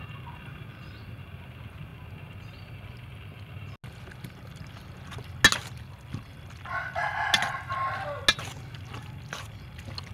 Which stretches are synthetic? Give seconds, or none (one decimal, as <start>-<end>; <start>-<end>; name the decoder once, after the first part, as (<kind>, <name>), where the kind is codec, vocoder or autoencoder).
none